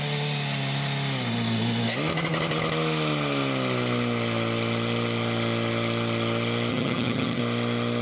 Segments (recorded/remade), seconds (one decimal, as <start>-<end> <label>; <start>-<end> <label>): 0.0-6.7 recorded; 6.7-7.4 remade; 7.4-8.0 recorded